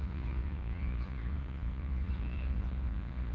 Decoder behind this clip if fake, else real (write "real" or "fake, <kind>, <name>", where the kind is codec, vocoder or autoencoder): fake, vocoder, Vocos